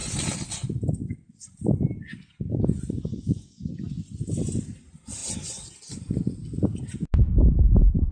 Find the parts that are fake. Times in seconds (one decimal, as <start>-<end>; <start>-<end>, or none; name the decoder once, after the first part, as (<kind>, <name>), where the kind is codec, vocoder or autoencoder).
3.1-3.7 (codec, DAC)